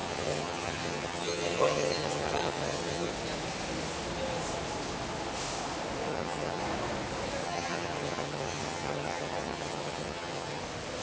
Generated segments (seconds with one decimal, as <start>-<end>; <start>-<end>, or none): 0.0-3.1; 6.1-6.6; 7.4-10.6